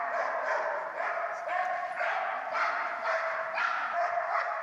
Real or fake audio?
real